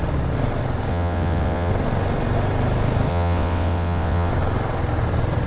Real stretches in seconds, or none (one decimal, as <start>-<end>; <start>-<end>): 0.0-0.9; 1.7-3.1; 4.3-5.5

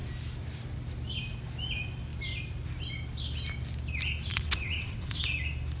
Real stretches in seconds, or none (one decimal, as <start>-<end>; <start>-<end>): 0.0-4.3; 5.2-5.8

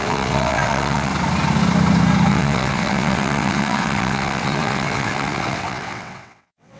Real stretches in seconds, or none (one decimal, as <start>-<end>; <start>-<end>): 1.1-2.3

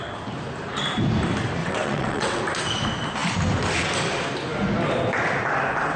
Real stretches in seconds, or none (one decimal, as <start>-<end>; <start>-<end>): 0.0-1.6; 2.4-6.0

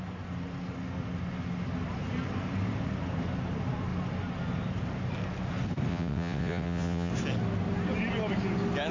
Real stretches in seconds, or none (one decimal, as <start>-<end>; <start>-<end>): 0.0-5.9; 7.1-8.9